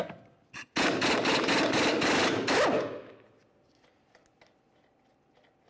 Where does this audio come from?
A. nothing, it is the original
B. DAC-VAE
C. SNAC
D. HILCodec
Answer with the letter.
A